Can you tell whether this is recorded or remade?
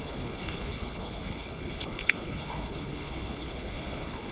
remade